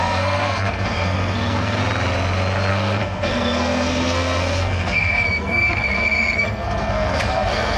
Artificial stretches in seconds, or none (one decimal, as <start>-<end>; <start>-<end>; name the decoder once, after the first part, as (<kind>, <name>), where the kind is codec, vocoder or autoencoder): 0.0-1.8 (codec, SNAC); 2.7-7.8